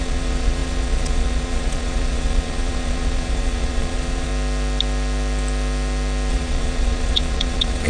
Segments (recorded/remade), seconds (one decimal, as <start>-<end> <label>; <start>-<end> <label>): 0.0-4.3 remade; 4.3-6.3 recorded; 6.3-7.9 remade